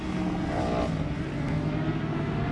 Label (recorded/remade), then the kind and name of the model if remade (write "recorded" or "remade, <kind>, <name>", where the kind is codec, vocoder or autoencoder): recorded